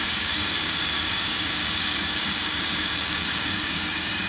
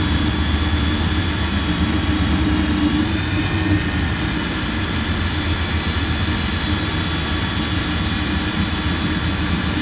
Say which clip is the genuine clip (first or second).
second